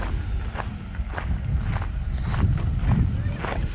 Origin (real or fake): real